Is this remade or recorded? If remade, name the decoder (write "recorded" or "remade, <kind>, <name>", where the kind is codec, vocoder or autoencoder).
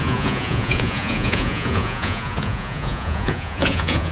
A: remade, vocoder, Vocos